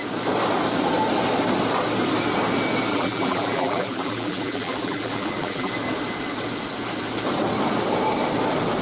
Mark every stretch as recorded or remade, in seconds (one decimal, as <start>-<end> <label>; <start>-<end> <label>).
0.0-2.9 recorded; 2.9-5.7 remade; 5.7-8.8 recorded